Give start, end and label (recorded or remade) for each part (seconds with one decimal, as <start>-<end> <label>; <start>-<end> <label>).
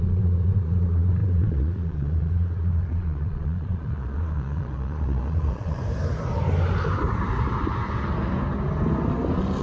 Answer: 0.0-5.8 remade; 5.8-9.6 recorded